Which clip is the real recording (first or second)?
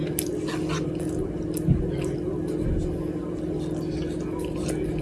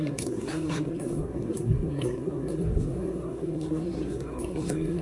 first